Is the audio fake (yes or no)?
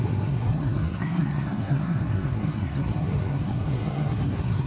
yes